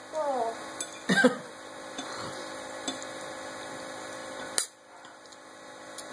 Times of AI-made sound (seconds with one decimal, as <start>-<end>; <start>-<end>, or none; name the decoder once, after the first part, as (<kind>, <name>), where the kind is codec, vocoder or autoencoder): none

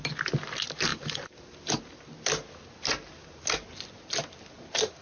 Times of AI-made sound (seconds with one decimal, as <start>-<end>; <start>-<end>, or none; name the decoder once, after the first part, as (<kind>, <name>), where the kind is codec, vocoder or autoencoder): 0.9-1.8 (vocoder, BigVGAN v2)

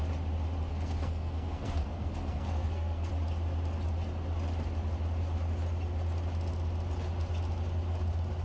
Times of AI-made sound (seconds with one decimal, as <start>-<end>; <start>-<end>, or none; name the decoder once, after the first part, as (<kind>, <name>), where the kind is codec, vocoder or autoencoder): 0.7-3.1 (codec, SNAC)

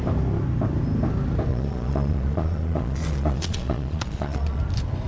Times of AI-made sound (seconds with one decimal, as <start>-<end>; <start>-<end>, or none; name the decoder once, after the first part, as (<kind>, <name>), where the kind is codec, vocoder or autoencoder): 1.5-4.6 (vocoder, Vocos)

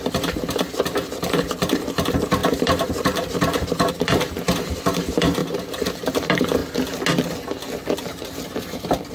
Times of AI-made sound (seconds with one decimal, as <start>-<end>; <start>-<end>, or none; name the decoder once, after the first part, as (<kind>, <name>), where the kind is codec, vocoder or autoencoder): 0.0-6.6 (vocoder, BigVGAN v2); 8.0-9.1

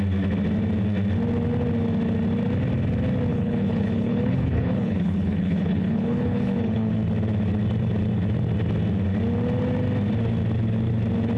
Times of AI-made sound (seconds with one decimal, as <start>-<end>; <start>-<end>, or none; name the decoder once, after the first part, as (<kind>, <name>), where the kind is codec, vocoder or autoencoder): 3.3-6.9 (codec, HILCodec)

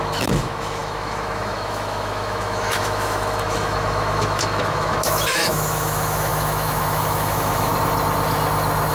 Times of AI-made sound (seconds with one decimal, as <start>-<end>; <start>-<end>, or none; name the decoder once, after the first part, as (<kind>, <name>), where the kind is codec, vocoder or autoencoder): 0.0-7.7 (autoencoder, DAC-VAE)